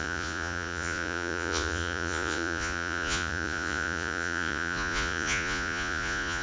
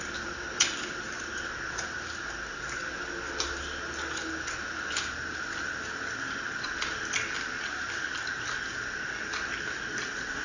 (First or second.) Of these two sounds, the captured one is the second